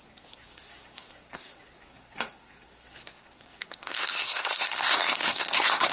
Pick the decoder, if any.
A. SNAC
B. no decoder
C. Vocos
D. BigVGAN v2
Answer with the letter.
A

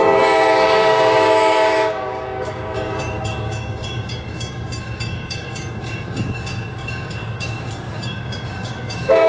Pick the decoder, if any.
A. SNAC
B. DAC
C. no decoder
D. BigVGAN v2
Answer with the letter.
B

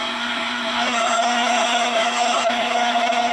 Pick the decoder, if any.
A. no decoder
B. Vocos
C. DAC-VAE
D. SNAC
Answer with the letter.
D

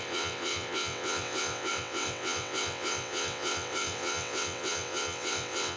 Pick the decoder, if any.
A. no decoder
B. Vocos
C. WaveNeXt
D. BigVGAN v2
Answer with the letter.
C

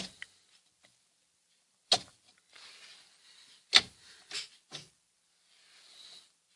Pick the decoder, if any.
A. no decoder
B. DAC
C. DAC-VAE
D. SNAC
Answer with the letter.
A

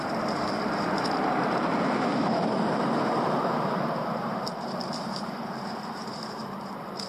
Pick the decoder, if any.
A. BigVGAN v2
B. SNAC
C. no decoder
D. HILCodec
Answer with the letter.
A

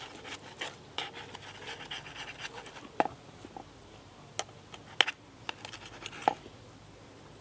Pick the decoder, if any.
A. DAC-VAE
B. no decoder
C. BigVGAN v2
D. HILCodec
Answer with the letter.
B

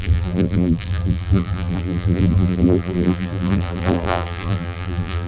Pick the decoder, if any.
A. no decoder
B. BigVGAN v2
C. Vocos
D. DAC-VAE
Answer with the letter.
B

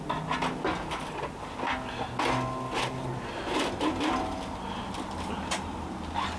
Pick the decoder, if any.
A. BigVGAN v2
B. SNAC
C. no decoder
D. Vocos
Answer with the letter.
C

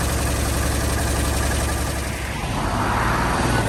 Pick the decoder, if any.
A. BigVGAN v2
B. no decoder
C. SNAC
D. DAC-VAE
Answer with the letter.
B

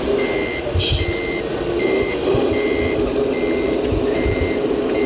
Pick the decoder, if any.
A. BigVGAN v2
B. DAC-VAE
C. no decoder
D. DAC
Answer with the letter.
C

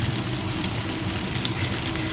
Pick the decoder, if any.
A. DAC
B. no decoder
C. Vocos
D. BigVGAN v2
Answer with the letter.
D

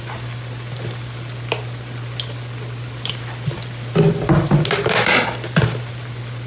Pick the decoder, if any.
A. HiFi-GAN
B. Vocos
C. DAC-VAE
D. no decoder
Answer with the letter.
D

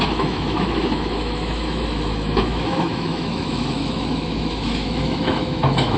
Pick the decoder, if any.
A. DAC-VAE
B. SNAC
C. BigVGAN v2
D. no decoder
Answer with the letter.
A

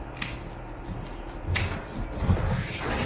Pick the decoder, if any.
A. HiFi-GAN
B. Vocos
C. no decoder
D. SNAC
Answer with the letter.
C